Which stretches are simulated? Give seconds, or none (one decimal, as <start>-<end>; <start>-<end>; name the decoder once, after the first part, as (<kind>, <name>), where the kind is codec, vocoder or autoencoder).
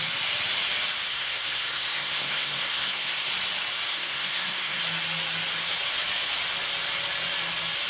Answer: 1.1-3.3 (codec, SNAC); 3.9-4.8